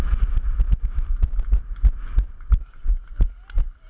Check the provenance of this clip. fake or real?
real